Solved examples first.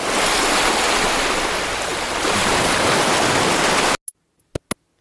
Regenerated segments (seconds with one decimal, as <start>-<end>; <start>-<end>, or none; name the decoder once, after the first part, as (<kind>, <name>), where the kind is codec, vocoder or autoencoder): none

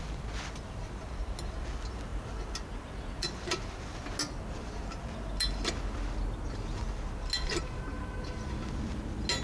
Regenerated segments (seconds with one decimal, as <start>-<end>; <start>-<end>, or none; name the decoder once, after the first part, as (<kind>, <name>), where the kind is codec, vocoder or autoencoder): none

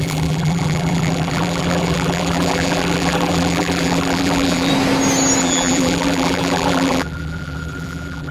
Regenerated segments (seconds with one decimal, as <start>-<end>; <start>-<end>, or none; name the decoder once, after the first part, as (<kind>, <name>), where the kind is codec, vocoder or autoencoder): 0.0-4.7 (vocoder, BigVGAN v2); 5.4-8.3